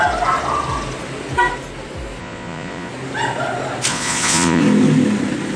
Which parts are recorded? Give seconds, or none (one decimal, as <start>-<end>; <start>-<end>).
0.0-2.2; 2.9-3.9; 4.6-5.6